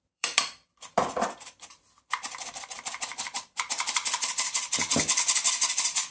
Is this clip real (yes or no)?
no